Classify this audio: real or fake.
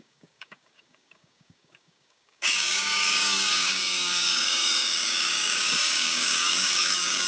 fake